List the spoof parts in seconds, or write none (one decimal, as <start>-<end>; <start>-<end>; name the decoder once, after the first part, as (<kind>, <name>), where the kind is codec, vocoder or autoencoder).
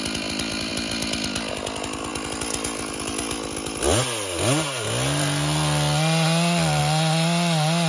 none